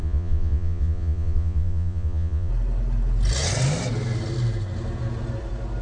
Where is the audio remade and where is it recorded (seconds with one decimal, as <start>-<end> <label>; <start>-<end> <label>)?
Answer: 0.0-2.5 remade; 2.5-5.8 recorded